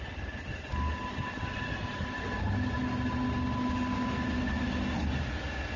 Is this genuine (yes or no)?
yes